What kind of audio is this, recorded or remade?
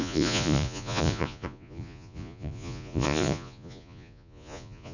remade